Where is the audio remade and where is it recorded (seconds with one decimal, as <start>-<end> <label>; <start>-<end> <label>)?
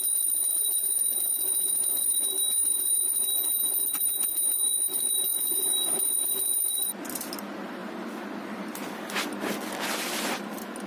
0.0-10.9 recorded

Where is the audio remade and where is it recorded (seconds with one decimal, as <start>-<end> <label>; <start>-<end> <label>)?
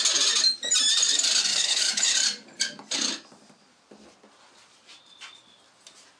0.0-1.5 recorded; 1.5-2.1 remade; 2.1-6.2 recorded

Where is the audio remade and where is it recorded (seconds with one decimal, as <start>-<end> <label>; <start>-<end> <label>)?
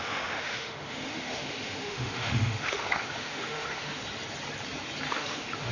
0.0-4.0 remade; 4.0-5.1 recorded; 5.1-5.7 remade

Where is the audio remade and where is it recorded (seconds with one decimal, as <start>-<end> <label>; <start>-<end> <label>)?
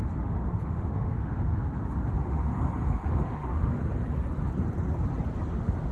0.0-2.5 remade; 2.5-3.1 recorded; 3.1-3.8 remade; 3.8-5.5 recorded; 5.5-5.9 remade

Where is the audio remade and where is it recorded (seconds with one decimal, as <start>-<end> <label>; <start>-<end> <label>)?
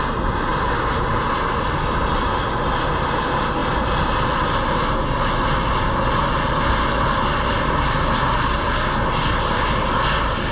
0.0-10.5 recorded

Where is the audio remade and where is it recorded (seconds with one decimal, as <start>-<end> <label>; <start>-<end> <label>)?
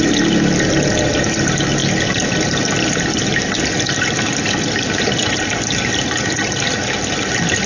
0.0-7.7 recorded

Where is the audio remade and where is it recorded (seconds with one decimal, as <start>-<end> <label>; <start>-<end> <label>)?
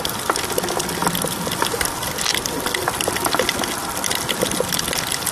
0.0-5.3 recorded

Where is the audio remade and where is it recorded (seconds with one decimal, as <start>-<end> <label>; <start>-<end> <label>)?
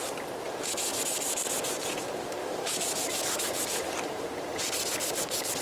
0.0-2.4 recorded; 2.4-3.8 remade; 3.8-5.6 recorded